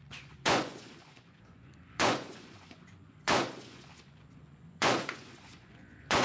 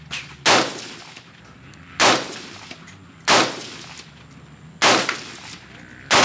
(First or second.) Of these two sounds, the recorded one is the second